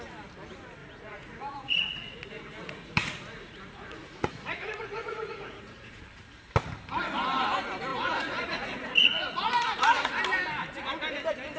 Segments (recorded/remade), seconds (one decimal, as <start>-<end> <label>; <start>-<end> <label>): 0.0-0.8 recorded; 0.8-6.0 remade; 6.0-7.9 recorded; 7.9-10.2 remade; 10.2-11.6 recorded